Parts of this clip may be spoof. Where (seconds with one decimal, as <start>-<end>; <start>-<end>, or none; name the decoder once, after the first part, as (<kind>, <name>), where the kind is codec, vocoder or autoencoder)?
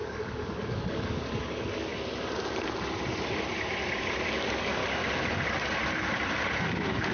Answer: 0.0-1.9 (codec, DAC); 4.0-4.8; 6.6-7.1